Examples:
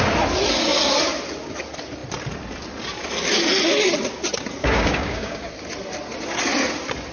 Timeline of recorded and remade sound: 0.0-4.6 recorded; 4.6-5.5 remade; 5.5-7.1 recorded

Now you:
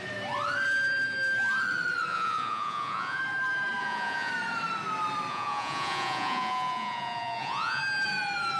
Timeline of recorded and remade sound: 0.0-2.1 recorded; 2.1-3.2 remade; 3.2-3.8 recorded; 3.8-4.3 remade; 4.3-5.3 recorded; 5.3-7.8 remade; 7.8-8.6 recorded